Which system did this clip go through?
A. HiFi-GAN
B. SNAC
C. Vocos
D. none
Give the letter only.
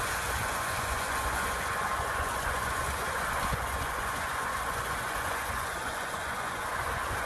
C